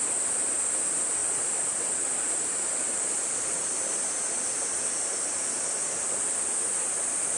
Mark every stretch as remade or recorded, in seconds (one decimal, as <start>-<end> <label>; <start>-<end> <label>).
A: 0.0-7.4 recorded